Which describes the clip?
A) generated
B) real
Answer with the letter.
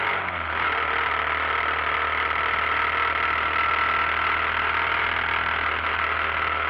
B